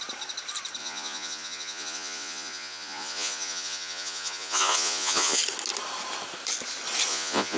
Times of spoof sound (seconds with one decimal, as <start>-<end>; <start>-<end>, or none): 0.8-5.4; 7.1-7.6